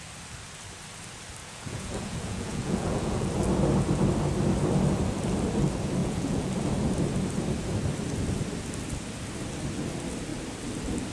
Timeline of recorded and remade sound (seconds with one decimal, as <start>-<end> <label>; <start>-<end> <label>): 0.0-1.4 recorded; 1.4-3.3 remade; 3.3-6.0 recorded; 6.0-6.5 remade; 6.5-11.1 recorded